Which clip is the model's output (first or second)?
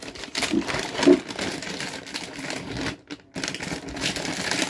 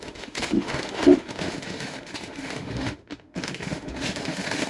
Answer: second